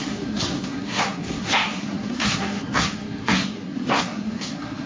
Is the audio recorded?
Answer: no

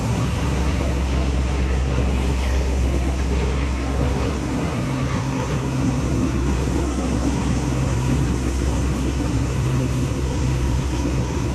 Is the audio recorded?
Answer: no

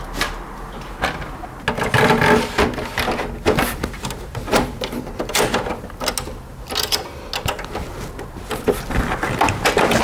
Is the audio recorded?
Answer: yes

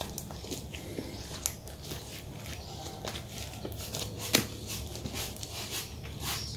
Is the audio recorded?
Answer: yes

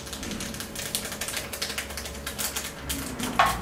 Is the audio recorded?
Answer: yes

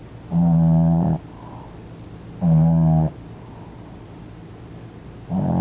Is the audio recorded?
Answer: yes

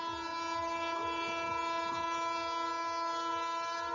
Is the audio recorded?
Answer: yes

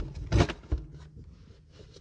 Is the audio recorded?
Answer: yes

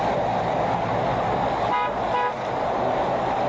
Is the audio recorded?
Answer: yes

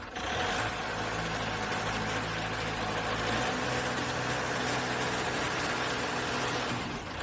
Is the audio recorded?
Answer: yes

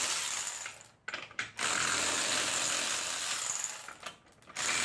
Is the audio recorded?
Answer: yes